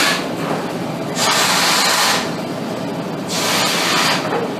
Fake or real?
real